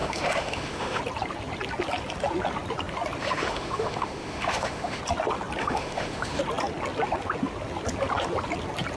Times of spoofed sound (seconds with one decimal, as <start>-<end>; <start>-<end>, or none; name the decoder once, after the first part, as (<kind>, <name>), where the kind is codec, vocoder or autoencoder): 0.0-1.0 (autoencoder, DAC-VAE); 3.2-5.0; 5.6-6.4